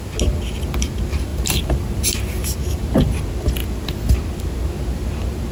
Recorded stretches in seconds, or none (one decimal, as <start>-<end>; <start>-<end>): 0.0-1.3; 3.2-5.5